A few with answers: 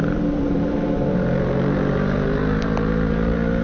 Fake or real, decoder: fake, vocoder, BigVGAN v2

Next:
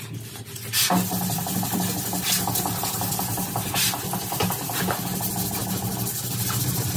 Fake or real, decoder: real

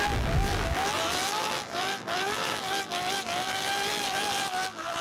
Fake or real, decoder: fake, vocoder, BigVGAN v2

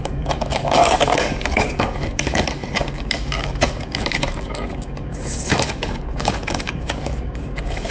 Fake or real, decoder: fake, codec, DAC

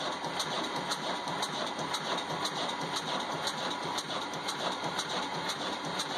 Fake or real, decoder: fake, vocoder, BigVGAN v2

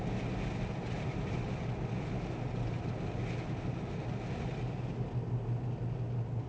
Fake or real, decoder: real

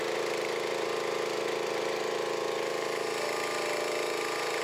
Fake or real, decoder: fake, vocoder, BigVGAN v2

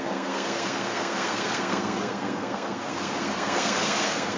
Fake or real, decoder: fake, codec, SNAC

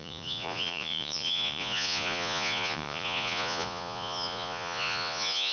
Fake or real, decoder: fake, vocoder, Vocos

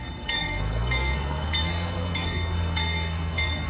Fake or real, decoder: fake, codec, SNAC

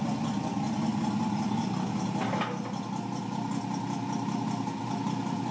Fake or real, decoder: real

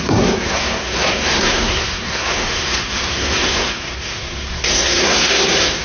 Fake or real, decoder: fake, codec, SNAC